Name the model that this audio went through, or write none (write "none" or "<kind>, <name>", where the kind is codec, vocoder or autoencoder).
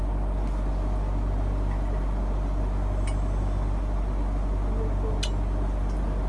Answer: none